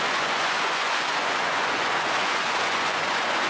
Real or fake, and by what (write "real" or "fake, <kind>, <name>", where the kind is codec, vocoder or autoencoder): fake, vocoder, Vocos